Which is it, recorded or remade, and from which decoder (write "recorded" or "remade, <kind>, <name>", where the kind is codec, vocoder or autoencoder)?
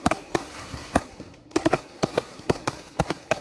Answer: remade, codec, SNAC